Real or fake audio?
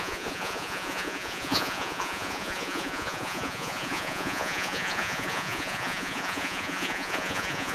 fake